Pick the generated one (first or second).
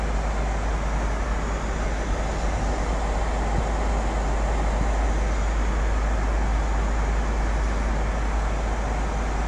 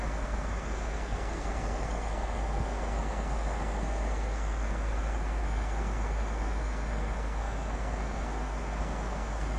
second